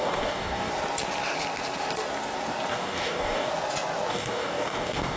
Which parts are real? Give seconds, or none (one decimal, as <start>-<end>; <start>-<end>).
0.7-2.7; 3.5-4.1